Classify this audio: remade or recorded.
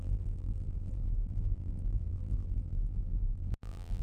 remade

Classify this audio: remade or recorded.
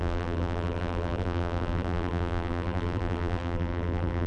remade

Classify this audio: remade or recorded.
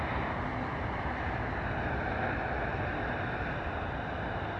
recorded